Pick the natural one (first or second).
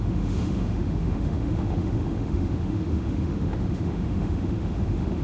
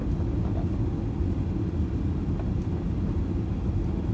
second